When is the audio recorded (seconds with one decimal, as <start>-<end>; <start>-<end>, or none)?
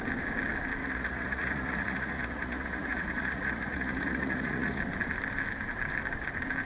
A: 0.0-0.8; 4.8-6.7